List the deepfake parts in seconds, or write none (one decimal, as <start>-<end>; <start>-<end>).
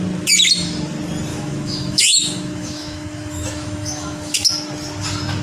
1.3-4.5